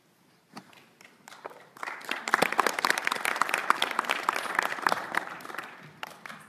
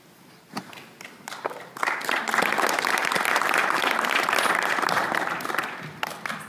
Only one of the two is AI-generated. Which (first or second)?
first